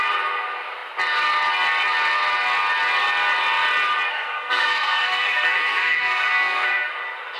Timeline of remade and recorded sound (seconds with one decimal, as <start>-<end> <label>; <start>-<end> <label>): 0.0-4.1 recorded; 4.1-6.9 remade; 6.9-7.4 recorded